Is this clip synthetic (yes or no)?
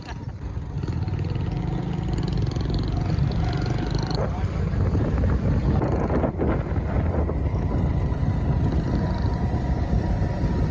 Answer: no